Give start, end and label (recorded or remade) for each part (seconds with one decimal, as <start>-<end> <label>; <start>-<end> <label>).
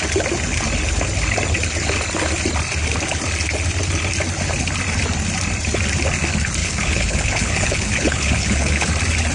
0.0-6.6 recorded; 6.6-8.9 remade; 8.9-9.3 recorded